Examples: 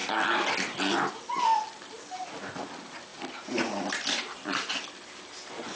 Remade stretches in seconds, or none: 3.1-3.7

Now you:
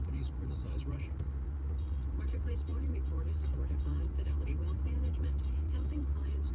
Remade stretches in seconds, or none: 0.0-6.5

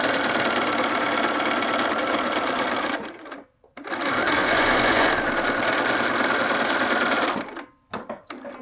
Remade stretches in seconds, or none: 4.4-5.1

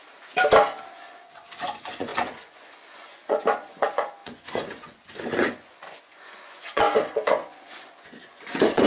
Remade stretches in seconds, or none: 0.9-8.9